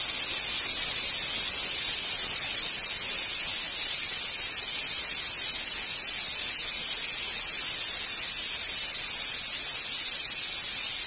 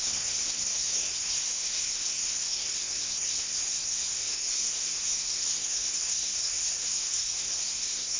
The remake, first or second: second